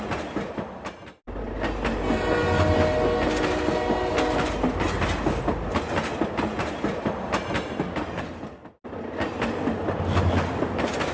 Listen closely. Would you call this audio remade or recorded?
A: recorded